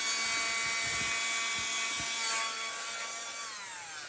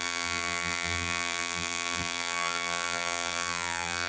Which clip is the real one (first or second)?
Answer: first